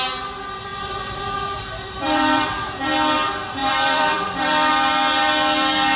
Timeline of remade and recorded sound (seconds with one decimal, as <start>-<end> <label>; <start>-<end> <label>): 0.0-0.7 recorded; 0.7-2.5 remade; 2.5-3.6 recorded; 3.6-4.7 remade; 4.7-6.0 recorded